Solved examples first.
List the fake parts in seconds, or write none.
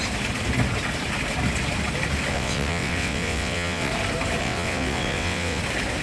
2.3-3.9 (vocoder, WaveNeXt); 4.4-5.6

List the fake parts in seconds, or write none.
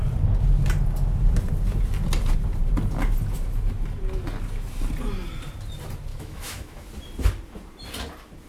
6.1-6.9 (autoencoder, DAC-VAE)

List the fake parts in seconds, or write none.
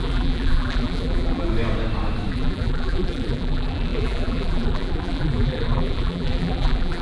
0.0-1.5 (vocoder, BigVGAN v2); 2.3-7.0